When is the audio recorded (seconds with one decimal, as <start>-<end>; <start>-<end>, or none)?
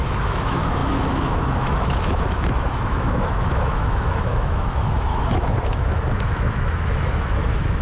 none